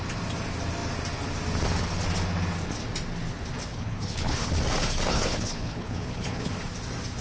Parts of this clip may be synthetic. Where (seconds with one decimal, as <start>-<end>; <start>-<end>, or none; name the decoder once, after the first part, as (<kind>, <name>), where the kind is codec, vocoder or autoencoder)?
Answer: 3.7-4.5 (codec, HILCodec); 5.1-6.5